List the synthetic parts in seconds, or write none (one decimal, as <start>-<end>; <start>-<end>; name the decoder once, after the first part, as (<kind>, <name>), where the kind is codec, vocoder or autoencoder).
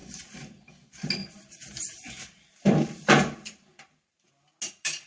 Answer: 0.0-0.7 (vocoder, BigVGAN v2); 1.2-4.3